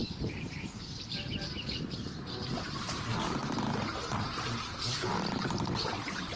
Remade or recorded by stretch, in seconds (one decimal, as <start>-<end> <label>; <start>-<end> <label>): 0.0-3.4 remade; 3.4-5.3 recorded; 5.3-6.4 remade